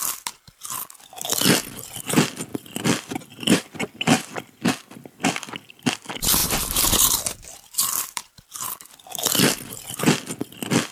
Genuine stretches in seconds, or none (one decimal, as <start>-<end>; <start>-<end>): 0.0-2.5; 4.3-6.4; 10.0-10.9